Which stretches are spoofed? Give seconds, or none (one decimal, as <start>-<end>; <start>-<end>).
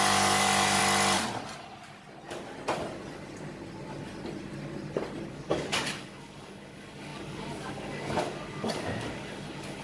0.0-0.8; 5.3-9.8